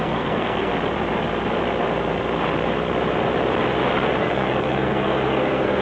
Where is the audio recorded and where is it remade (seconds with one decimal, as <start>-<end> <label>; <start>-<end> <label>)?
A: 0.0-0.7 remade; 0.7-4.2 recorded; 4.2-5.8 remade